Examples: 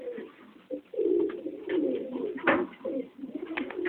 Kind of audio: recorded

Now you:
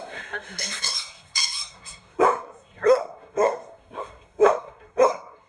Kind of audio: remade